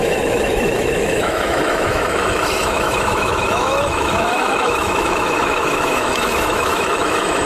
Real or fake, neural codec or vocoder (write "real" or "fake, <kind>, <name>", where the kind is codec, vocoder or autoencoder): fake, autoencoder, DAC-VAE